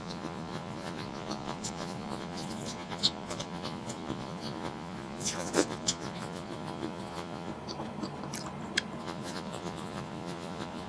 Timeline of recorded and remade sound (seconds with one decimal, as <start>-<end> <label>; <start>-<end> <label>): 0.0-7.5 remade; 7.5-9.0 recorded; 9.0-10.9 remade